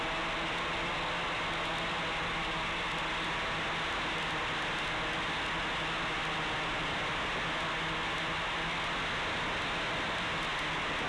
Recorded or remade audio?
recorded